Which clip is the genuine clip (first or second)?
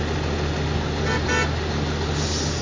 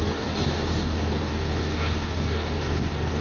first